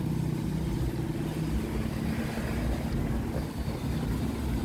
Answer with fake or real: real